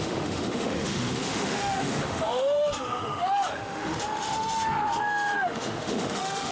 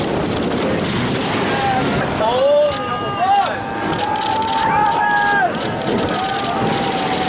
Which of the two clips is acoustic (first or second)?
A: second